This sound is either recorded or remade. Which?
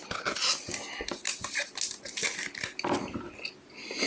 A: recorded